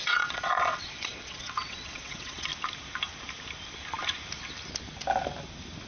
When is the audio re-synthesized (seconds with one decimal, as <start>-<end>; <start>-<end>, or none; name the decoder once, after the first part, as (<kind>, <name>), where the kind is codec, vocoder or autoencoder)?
0.0-2.5 (vocoder, WaveNeXt)